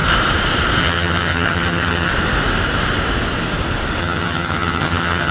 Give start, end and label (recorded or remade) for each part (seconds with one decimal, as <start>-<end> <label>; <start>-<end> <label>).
0.0-0.8 recorded; 0.8-2.1 remade; 2.1-4.0 recorded; 4.0-5.3 remade